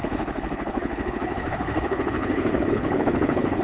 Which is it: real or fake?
fake